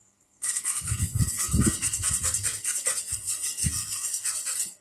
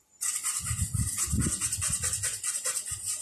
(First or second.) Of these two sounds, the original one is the second